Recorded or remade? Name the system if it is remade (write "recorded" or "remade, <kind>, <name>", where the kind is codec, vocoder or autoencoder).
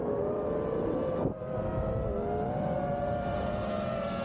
recorded